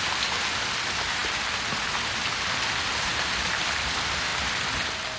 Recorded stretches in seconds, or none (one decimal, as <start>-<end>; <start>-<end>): 0.0-5.2